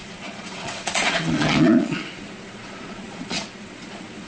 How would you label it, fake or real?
fake